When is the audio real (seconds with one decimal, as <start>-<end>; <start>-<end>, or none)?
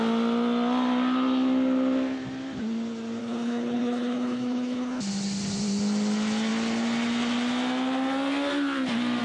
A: 0.0-3.2; 5.0-9.2